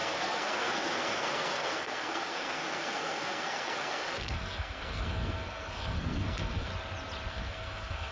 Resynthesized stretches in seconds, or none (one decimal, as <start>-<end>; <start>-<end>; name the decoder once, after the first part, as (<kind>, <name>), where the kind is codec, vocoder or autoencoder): 0.0-6.7 (codec, SNAC); 7.3-8.1